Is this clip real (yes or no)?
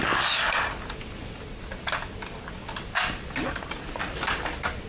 yes